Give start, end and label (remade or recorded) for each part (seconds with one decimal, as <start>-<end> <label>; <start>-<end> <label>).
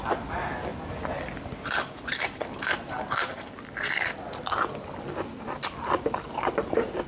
0.0-7.1 recorded